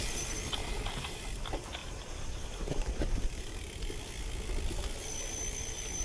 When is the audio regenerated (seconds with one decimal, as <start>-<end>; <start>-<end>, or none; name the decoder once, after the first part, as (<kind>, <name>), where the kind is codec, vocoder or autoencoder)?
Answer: 0.6-1.2 (vocoder, BigVGAN v2); 1.8-3.4